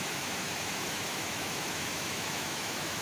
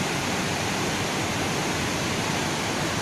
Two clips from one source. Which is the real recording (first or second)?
second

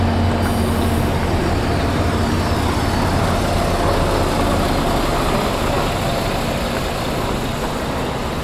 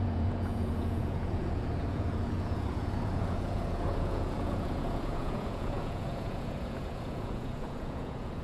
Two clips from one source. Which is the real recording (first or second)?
first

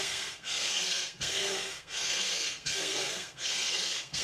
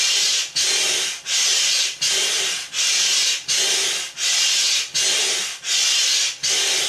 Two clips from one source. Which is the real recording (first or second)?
second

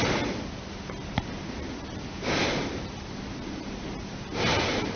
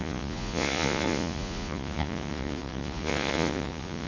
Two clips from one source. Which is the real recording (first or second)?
first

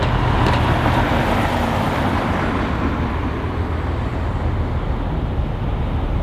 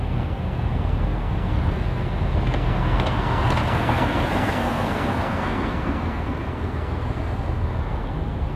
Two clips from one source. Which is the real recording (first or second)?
first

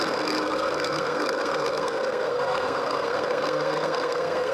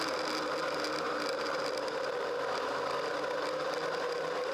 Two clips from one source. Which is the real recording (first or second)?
second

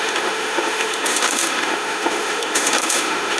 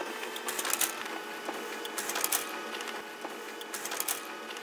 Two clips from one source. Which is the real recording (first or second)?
second